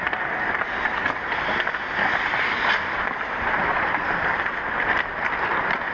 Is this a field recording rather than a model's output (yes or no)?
yes